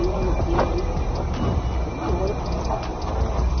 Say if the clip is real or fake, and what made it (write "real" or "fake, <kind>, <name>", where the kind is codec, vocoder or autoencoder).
real